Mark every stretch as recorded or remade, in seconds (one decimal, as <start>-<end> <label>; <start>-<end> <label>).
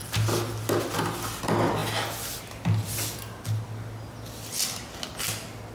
0.0-5.7 recorded